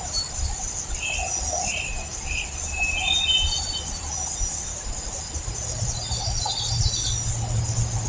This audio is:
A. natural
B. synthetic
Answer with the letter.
A